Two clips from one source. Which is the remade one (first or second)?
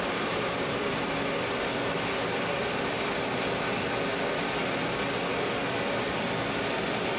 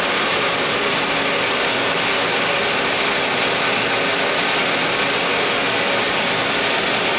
first